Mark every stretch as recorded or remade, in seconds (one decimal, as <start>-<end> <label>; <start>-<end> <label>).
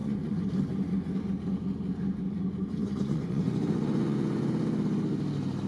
0.0-0.5 remade; 0.5-2.6 recorded; 2.6-4.5 remade; 4.5-5.7 recorded